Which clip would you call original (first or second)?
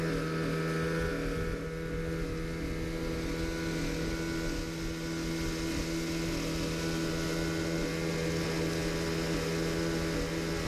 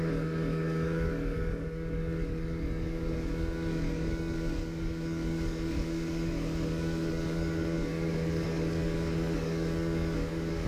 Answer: first